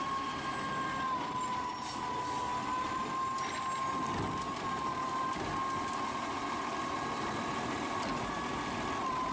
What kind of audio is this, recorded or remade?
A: recorded